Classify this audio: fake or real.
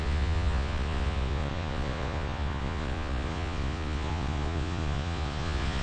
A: fake